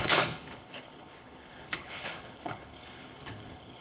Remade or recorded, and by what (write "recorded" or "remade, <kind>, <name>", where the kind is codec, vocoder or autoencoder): remade, codec, HILCodec